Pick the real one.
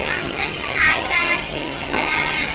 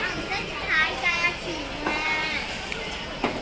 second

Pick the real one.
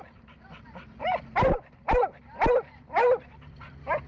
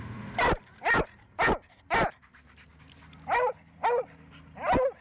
second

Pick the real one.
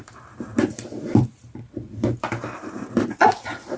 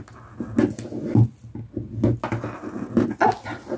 second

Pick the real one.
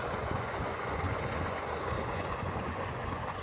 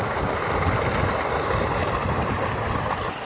second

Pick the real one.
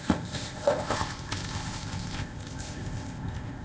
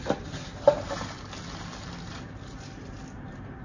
second